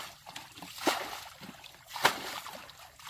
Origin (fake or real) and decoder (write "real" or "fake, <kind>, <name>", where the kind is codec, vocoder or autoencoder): real